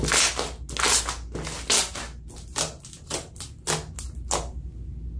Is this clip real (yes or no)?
yes